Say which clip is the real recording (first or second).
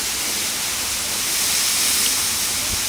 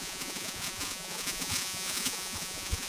first